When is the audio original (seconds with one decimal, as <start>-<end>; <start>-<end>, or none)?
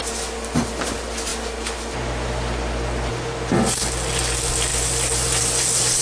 0.0-6.0